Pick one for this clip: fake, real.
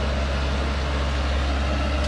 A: real